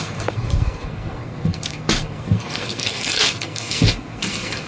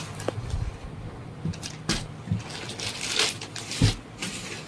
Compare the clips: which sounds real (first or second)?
second